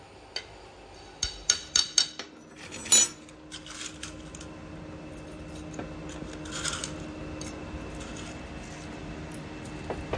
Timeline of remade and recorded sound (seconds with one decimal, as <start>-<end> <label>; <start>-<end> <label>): 0.0-10.2 recorded